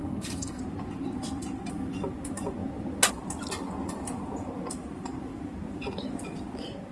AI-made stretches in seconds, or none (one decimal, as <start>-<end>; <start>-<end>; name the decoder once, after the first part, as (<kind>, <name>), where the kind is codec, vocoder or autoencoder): 0.0-0.6 (codec, SNAC)